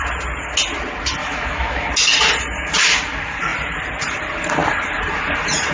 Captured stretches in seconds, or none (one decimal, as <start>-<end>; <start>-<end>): 0.0-1.2; 1.9-5.7